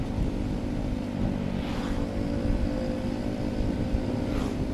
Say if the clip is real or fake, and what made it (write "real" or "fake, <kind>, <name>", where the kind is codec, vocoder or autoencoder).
real